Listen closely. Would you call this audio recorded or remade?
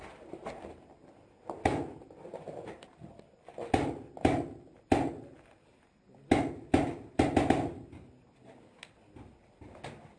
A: recorded